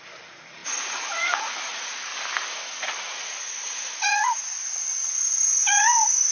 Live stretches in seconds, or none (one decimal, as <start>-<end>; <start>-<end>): 2.1-3.1; 4.5-5.1

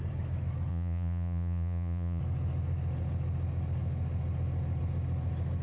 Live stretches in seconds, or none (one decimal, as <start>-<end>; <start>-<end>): 0.0-0.7; 2.2-5.6

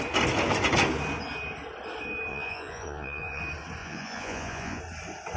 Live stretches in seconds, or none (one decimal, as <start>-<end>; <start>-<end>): 0.0-2.3; 3.4-3.8; 4.8-5.4

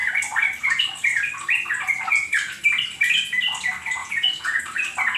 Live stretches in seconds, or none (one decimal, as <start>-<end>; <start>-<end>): 0.0-4.0; 4.6-5.2